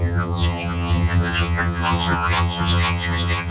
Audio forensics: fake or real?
fake